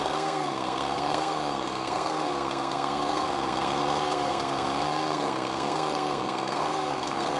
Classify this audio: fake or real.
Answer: fake